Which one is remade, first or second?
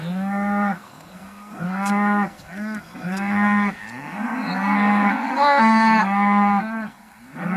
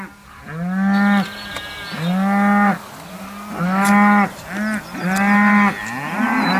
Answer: first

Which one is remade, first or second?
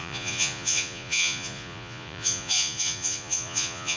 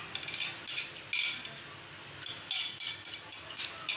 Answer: first